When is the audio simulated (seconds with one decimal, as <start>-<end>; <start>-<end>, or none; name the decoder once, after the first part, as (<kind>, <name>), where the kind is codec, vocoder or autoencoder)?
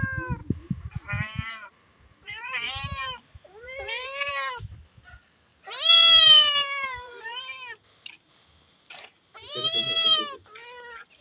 0.4-4.3 (vocoder, BigVGAN v2); 5.5-7.4; 8.7-10.2